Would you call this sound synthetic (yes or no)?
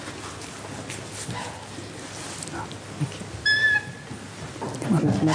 no